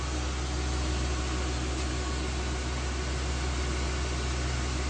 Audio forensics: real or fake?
real